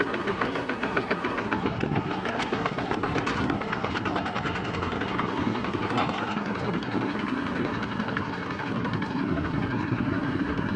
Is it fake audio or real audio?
fake